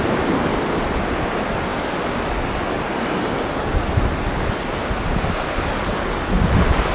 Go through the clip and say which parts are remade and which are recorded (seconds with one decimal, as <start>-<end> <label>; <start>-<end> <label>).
0.0-6.9 recorded